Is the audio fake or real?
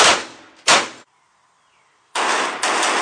real